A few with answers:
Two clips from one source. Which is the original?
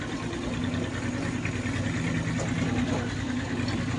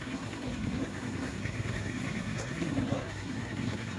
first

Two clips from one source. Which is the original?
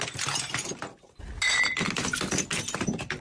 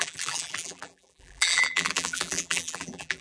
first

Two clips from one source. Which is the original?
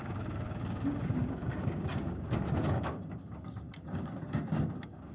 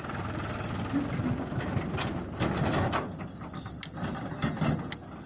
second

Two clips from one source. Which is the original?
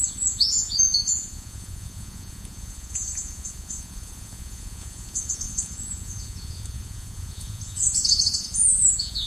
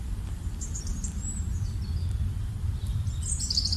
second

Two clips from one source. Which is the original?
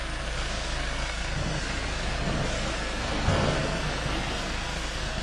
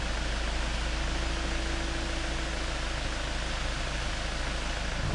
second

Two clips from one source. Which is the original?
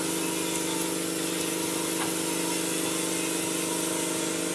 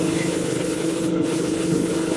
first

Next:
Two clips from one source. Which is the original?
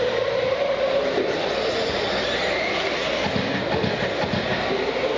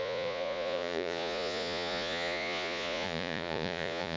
first